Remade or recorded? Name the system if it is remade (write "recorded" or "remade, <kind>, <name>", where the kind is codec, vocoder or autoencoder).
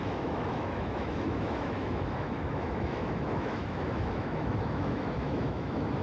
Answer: remade, autoencoder, DAC-VAE